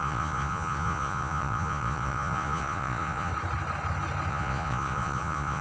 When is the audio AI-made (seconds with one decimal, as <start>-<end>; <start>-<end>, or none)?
0.0-3.3; 4.3-5.6